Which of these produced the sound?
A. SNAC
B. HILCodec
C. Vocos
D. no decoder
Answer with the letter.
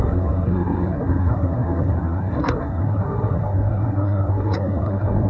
A